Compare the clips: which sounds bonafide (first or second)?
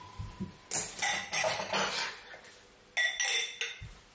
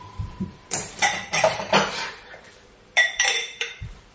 first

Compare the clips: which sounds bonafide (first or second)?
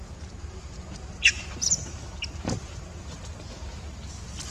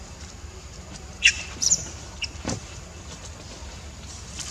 first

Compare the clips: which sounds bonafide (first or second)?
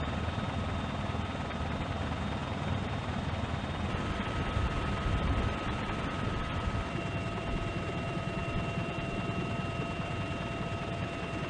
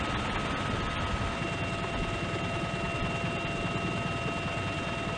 second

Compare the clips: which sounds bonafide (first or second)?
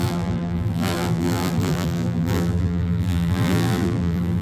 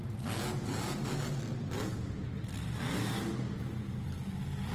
second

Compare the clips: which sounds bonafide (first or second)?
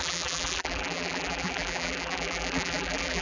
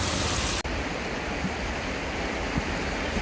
second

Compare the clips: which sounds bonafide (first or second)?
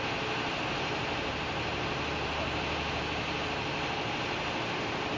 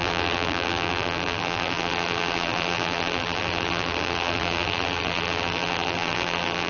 first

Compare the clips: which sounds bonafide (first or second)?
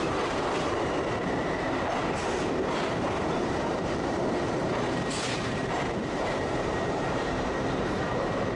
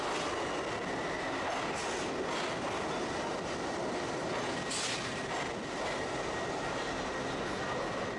second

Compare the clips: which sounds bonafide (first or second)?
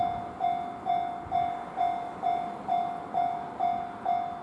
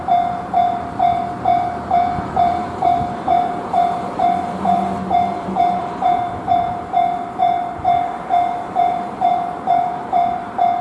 first